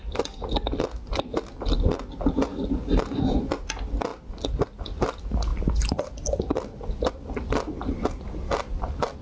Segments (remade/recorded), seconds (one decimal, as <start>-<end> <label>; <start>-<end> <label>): 0.0-9.2 recorded